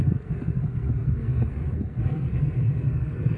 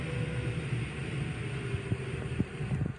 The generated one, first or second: first